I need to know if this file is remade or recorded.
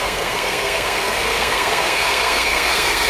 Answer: remade